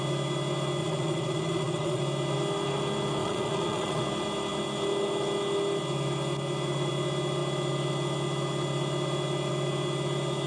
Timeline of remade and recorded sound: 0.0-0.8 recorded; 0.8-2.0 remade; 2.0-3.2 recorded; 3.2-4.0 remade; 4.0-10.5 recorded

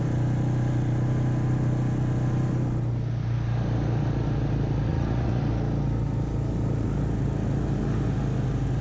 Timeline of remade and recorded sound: 0.0-4.9 recorded; 4.9-5.4 remade; 5.4-8.8 recorded

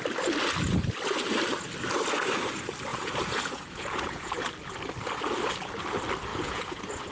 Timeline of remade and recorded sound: 0.0-2.9 recorded; 2.9-4.3 remade; 4.3-6.3 recorded; 6.3-7.1 remade

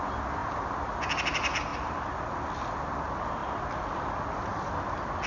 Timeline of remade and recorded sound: 0.0-5.3 recorded

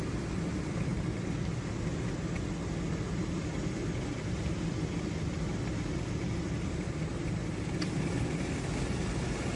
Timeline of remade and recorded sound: 0.0-9.6 recorded

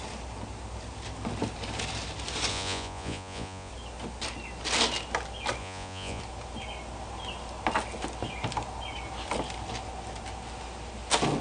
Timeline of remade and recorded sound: 0.0-2.5 recorded; 2.5-3.7 remade; 3.7-5.6 recorded; 5.6-6.2 remade; 6.2-11.4 recorded